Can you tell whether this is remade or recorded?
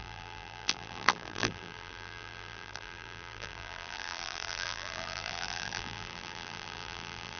remade